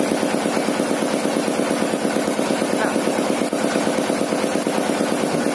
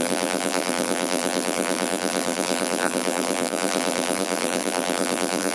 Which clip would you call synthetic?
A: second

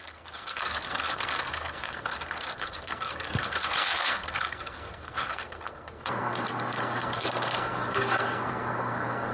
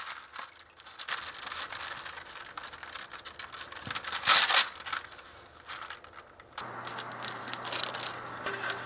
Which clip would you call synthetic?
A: first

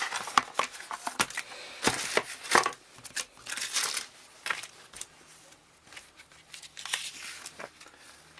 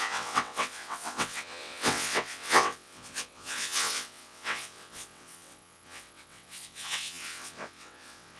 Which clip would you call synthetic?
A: second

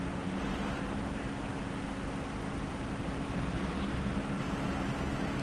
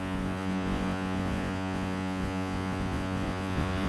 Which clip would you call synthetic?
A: second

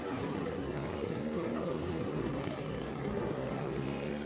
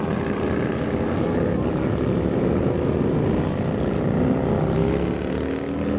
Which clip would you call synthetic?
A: first